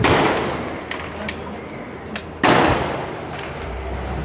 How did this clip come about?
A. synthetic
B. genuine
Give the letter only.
B